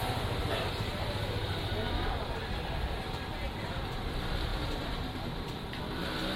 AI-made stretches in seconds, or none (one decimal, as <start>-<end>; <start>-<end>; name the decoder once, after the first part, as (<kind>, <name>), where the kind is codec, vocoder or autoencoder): none